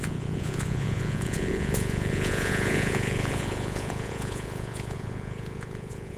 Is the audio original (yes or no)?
no